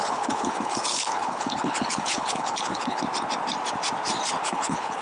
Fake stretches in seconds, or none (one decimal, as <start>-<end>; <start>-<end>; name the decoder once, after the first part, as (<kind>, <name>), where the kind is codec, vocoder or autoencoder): 0.0-3.0 (codec, HILCodec); 4.4-5.0